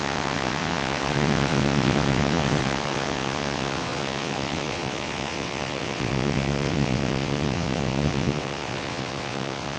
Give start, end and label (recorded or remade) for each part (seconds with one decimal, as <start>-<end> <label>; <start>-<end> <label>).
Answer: 0.0-9.8 remade